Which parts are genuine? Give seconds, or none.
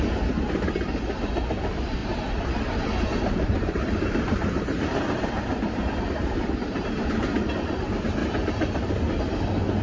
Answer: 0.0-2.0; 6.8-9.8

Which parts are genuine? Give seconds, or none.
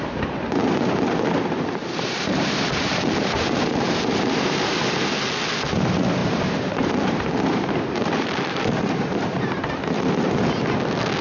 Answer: 0.0-1.8; 4.8-6.2; 10.1-11.2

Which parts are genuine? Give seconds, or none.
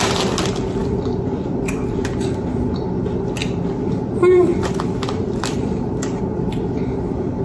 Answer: 0.0-0.8; 1.6-4.5; 6.2-7.4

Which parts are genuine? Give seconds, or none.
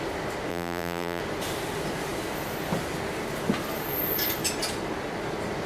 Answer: 0.0-0.5; 1.2-5.7